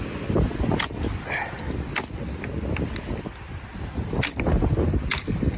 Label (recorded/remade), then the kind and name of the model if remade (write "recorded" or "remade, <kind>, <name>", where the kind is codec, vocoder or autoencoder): recorded